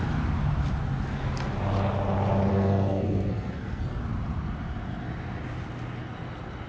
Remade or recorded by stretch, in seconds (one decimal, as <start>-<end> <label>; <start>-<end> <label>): 0.0-2.5 recorded; 2.5-4.0 remade; 4.0-6.7 recorded